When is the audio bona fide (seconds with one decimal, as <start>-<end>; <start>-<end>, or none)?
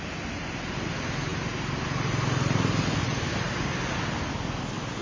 0.0-5.0